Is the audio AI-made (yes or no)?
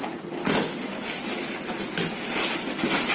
no